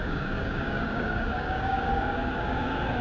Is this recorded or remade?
remade